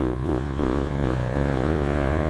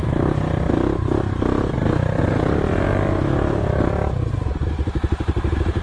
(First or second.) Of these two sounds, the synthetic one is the first